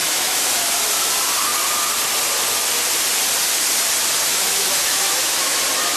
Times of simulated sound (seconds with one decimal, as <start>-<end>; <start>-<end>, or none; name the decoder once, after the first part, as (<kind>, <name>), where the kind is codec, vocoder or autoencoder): 0.0-0.7 (autoencoder, DAC-VAE); 4.3-5.6